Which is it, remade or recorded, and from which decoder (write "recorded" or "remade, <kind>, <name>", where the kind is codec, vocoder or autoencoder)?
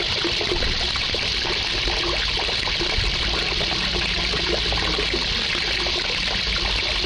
recorded